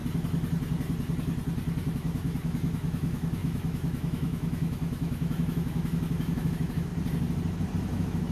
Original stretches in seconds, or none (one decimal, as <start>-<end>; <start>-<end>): 0.0-1.9; 6.9-7.9